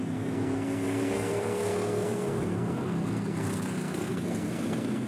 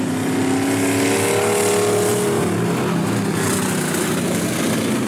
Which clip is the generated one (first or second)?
first